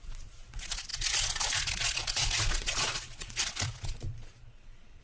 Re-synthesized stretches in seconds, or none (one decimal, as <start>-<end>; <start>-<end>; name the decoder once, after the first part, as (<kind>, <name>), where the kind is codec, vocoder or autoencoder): 0.0-5.0 (vocoder, Vocos)